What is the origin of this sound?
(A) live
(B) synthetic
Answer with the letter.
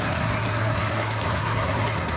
B